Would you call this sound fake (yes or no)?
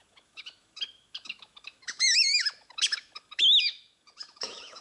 yes